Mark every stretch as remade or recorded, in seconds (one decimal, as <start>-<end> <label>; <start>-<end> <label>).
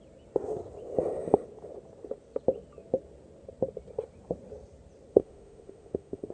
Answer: 0.0-5.1 recorded; 5.1-6.3 remade